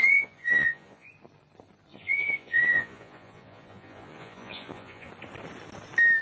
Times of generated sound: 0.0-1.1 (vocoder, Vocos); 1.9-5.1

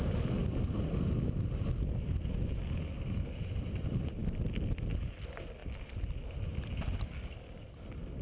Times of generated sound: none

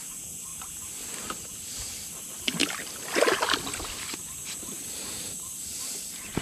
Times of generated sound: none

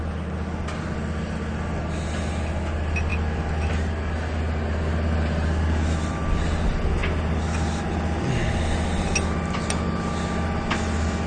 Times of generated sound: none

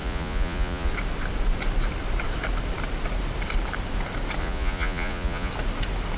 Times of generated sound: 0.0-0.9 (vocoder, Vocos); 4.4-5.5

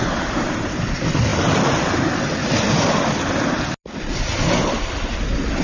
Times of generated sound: none

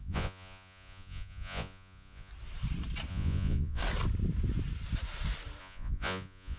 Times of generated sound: 0.0-2.3 (vocoder, Vocos); 3.1-3.8; 5.6-6.6

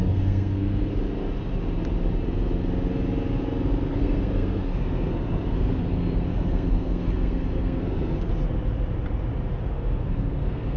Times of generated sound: 0.0-0.9 (codec, SNAC); 3.9-8.3; 9.6-10.8